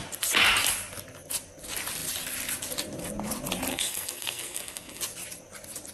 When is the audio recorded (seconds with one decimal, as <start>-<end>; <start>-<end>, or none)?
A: 0.0-3.7; 5.0-5.9